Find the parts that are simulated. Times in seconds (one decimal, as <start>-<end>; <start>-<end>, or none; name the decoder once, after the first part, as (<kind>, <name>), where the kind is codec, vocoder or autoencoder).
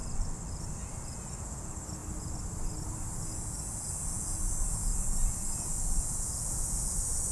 0.6-2.0 (vocoder, Vocos); 3.3-7.3